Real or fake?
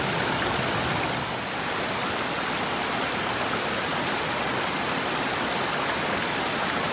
real